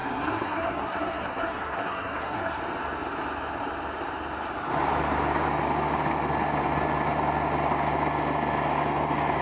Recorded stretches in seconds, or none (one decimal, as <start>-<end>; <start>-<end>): 2.6-9.4